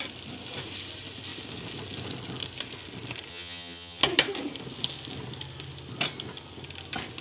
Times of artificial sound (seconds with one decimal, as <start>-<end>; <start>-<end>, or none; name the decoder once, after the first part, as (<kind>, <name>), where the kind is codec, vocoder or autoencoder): 3.3-4.0 (vocoder, HiFi-GAN)